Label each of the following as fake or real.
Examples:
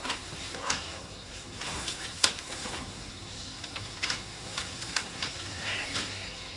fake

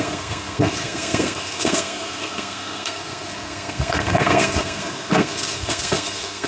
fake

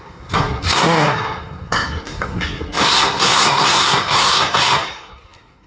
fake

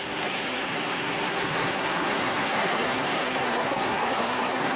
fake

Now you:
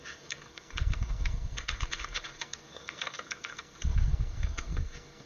fake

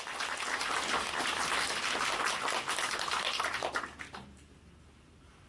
real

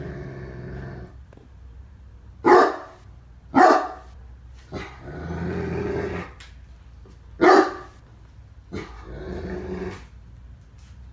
real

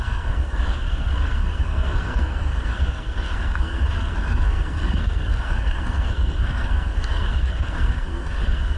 fake